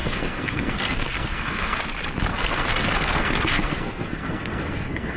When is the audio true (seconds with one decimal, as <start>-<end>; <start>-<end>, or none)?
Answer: 1.8-2.3